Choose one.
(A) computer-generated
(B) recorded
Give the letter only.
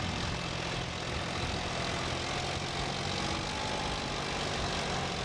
B